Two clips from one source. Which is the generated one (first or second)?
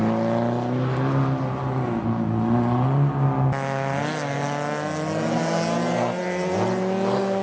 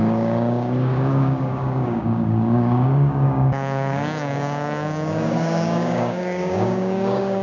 second